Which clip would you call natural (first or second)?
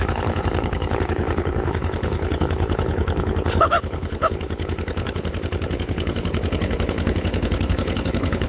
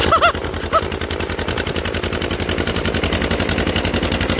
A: second